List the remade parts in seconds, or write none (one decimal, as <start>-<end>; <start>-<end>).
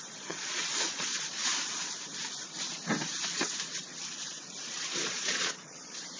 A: 0.0-1.4; 5.1-6.2